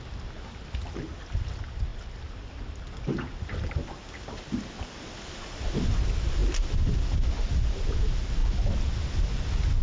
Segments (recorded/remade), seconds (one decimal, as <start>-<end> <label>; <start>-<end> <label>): 0.0-9.8 recorded